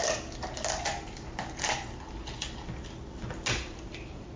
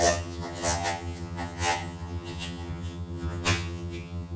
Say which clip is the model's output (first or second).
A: second